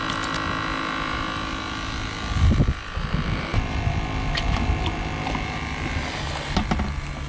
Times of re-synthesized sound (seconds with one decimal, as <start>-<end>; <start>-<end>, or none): none